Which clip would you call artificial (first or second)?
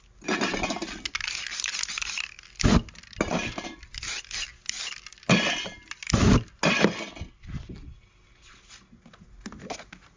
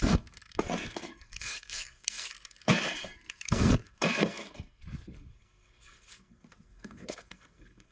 second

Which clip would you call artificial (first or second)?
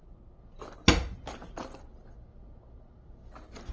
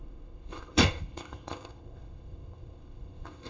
second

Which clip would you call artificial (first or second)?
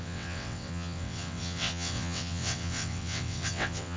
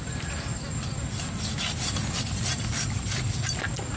first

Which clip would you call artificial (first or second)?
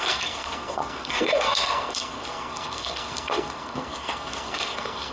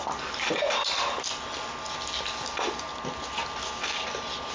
first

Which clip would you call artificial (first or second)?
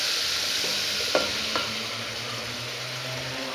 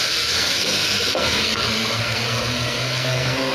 second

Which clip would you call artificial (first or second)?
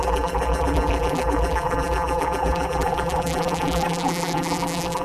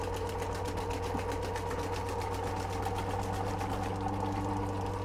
first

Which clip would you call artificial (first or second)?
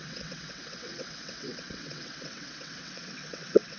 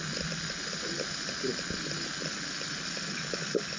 first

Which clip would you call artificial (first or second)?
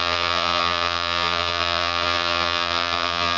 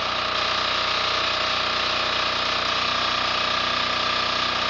first